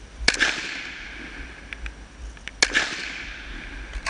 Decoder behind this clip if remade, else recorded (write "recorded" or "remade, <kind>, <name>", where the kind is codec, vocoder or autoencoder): recorded